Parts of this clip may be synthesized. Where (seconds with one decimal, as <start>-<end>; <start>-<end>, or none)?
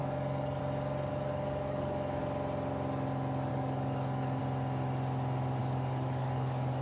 0.0-0.6; 1.1-2.2; 3.5-4.4; 5.6-6.8